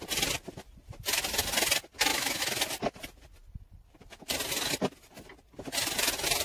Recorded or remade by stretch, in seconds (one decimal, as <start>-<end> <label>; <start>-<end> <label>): 0.0-2.1 recorded; 2.1-2.6 remade; 2.6-6.4 recorded